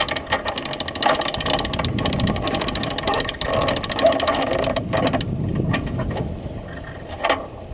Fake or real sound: real